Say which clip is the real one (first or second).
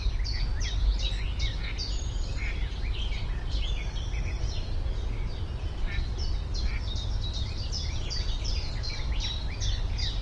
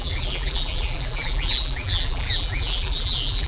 first